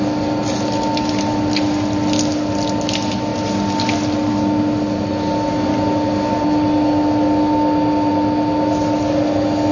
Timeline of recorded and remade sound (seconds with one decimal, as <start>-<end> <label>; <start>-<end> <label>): 0.0-9.7 recorded